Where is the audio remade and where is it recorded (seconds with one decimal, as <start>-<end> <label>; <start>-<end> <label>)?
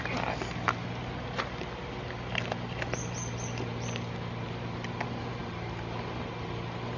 0.0-7.0 recorded